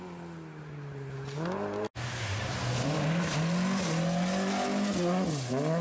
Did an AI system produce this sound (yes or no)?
no